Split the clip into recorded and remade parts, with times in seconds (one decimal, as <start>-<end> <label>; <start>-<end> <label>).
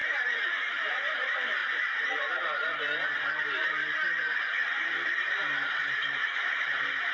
0.0-1.6 remade; 1.6-5.7 recorded; 5.7-7.1 remade